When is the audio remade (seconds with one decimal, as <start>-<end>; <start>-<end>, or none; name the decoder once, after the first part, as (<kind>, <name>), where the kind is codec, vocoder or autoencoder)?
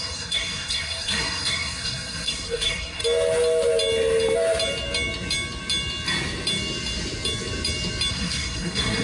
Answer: 0.0-3.0 (codec, SNAC); 8.1-9.0